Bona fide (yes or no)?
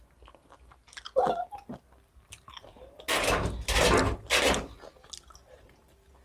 yes